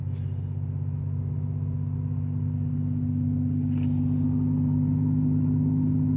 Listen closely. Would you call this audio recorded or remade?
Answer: recorded